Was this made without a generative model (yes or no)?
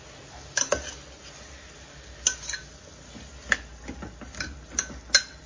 yes